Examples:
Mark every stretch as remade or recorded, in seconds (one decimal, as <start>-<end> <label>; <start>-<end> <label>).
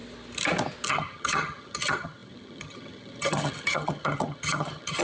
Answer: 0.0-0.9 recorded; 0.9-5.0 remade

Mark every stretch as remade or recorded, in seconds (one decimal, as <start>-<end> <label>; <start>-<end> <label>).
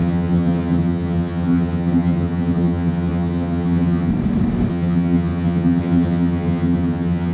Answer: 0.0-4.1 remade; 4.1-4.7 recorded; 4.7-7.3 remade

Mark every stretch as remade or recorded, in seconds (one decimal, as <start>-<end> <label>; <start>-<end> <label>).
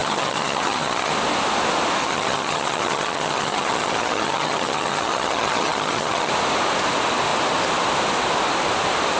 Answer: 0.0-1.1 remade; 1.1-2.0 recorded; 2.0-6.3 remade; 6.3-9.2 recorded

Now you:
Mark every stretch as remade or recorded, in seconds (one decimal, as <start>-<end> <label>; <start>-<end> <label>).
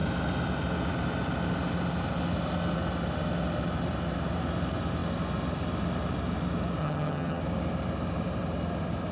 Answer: 0.0-6.8 recorded; 6.8-7.4 remade; 7.4-9.1 recorded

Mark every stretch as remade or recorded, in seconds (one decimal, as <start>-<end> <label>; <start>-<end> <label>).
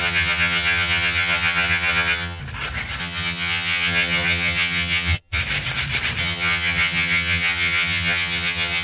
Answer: 0.0-2.4 remade; 2.4-3.0 recorded; 3.0-5.4 remade; 5.4-6.2 recorded; 6.2-8.8 remade